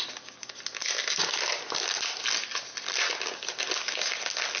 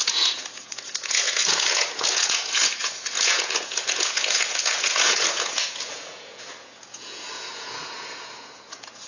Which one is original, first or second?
first